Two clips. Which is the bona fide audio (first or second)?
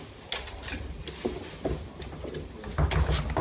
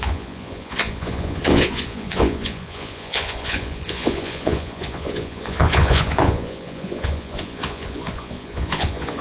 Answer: first